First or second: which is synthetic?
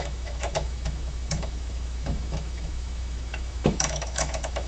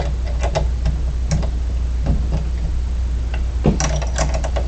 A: first